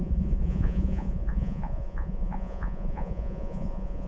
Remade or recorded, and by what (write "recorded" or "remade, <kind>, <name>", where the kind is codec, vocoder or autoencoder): remade, vocoder, Vocos